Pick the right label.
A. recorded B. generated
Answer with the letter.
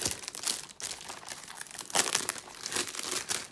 A